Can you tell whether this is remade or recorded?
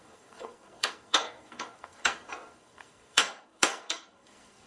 remade